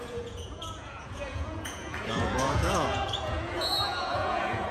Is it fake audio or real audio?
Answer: fake